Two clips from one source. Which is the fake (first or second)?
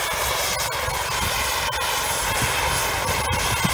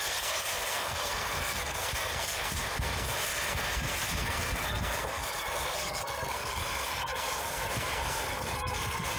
second